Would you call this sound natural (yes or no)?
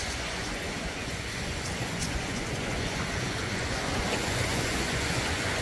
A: no